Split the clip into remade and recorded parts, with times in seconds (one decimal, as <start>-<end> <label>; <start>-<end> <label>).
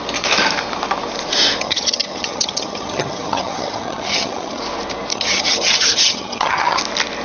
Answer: 0.0-1.6 recorded; 1.6-4.6 remade; 4.6-5.1 recorded; 5.1-6.8 remade; 6.8-7.2 recorded